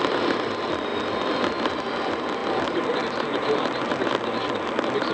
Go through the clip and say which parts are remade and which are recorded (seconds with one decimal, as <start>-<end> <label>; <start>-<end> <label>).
0.0-5.1 recorded